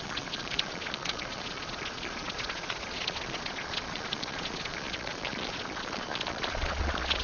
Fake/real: fake